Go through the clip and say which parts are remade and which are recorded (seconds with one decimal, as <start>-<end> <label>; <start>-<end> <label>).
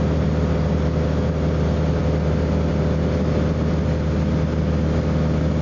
0.0-5.6 recorded